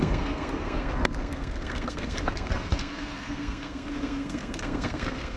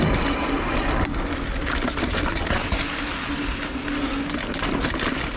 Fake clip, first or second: first